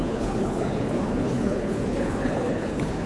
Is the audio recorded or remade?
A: remade